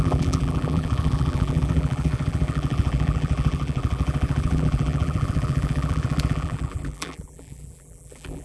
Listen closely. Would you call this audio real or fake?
fake